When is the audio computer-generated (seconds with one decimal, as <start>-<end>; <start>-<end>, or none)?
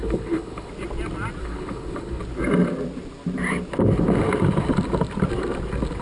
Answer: 0.0-0.7; 1.4-2.2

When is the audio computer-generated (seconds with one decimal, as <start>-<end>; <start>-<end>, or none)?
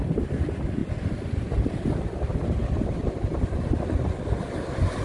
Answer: none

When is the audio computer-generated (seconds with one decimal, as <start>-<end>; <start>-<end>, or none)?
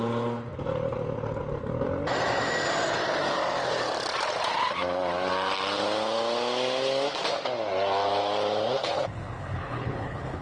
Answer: 8.8-10.4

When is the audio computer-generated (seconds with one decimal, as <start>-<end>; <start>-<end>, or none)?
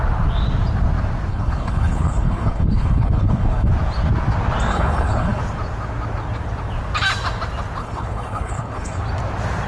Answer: 1.3-3.7; 4.7-5.4; 7.8-9.0